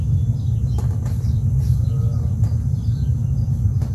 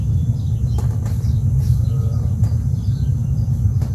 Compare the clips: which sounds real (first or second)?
first